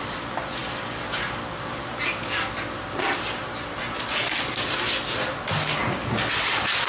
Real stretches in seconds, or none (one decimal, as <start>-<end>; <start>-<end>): 0.0-6.9